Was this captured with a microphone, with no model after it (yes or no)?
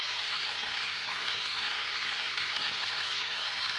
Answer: no